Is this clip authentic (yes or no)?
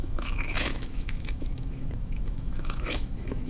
no